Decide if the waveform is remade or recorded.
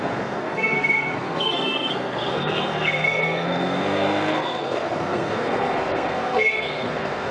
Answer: remade